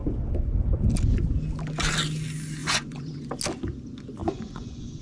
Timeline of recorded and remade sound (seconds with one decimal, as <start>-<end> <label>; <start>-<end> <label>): 0.0-2.6 recorded; 2.6-3.3 remade; 3.3-4.2 recorded; 4.2-5.0 remade

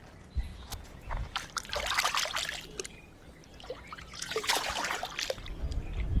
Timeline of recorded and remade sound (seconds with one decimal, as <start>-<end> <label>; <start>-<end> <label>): 0.0-0.5 recorded; 0.5-1.3 remade; 1.3-3.5 recorded; 3.5-4.7 remade; 4.7-6.2 recorded

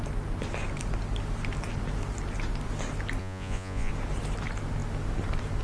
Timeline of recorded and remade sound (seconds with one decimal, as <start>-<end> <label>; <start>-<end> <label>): 0.0-3.2 recorded; 3.2-3.9 remade; 3.9-5.6 recorded